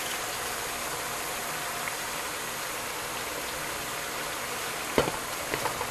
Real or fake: real